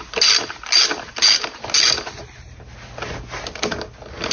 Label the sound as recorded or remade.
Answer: recorded